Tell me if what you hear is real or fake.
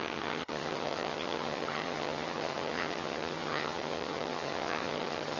fake